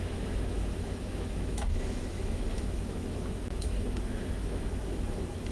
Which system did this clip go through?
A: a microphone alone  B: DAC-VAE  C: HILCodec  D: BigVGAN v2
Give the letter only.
B